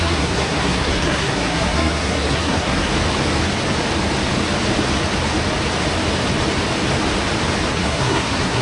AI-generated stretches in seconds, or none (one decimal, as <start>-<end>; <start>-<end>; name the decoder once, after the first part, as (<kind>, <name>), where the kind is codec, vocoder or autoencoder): 0.0-2.9 (codec, SNAC); 7.7-8.6